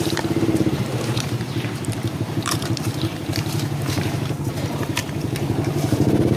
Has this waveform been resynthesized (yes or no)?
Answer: yes